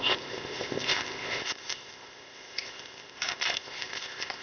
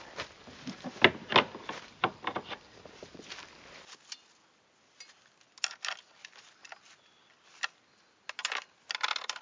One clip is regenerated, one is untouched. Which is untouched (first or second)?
second